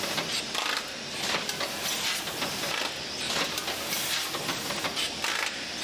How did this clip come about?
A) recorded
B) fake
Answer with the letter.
A